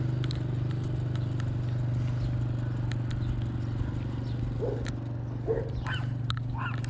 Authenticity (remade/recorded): recorded